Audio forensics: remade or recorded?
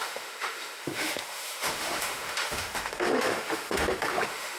remade